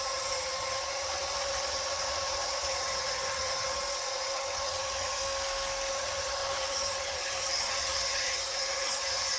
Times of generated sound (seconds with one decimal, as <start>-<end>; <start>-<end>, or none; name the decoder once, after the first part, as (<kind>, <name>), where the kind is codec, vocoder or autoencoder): 0.0-5.2 (vocoder, HiFi-GAN); 5.9-9.4